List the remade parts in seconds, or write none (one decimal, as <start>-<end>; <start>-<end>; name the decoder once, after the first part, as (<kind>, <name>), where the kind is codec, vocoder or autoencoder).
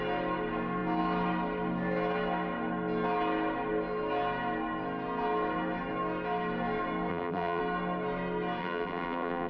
7.1-7.6 (vocoder, BigVGAN v2); 8.6-9.5